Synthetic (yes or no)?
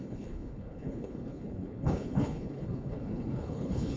yes